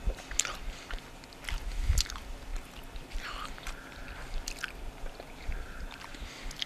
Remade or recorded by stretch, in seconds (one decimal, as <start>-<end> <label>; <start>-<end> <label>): 0.0-2.5 recorded; 2.5-6.7 remade